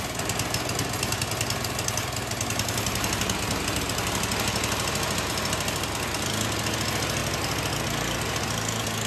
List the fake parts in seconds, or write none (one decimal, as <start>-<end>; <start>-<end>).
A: none